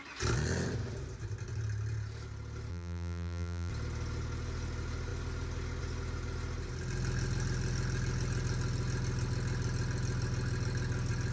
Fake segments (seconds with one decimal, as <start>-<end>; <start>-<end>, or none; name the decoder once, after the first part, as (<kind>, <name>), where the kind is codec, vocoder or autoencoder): 2.7-3.7 (vocoder, BigVGAN v2)